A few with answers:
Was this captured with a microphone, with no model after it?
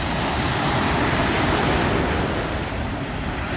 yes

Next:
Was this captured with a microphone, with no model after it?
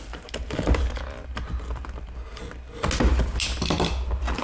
yes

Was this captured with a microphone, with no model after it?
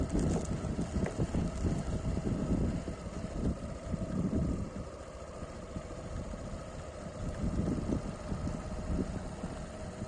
yes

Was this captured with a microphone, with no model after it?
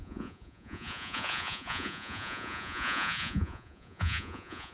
no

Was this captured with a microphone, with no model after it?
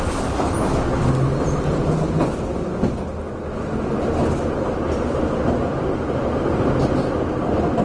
yes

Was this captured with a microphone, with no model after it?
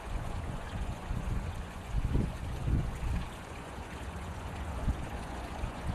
no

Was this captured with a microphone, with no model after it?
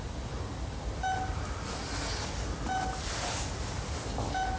yes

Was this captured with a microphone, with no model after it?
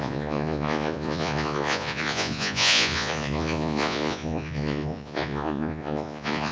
no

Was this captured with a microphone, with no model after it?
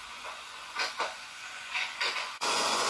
no